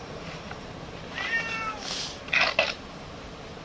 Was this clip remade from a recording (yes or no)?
no